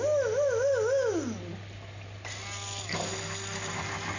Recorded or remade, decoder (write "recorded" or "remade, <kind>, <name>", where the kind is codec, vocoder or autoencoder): recorded